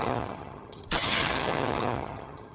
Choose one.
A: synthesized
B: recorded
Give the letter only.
A